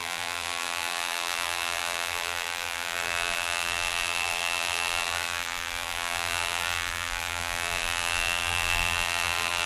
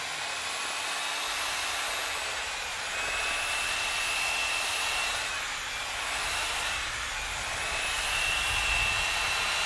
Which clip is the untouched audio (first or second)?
second